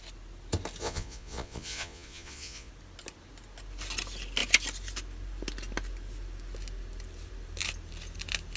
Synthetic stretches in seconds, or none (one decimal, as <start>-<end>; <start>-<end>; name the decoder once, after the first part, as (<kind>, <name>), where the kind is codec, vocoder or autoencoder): 0.8-2.7 (vocoder, Vocos)